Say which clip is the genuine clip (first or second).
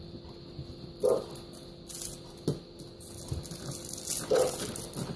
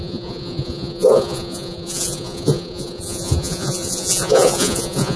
first